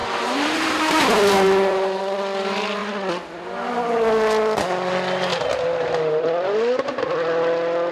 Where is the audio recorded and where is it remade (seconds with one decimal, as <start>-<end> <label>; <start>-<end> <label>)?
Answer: 0.0-2.0 remade; 2.0-7.9 recorded